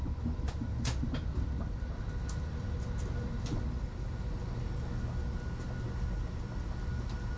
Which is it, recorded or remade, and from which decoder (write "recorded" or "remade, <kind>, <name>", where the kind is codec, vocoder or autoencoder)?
recorded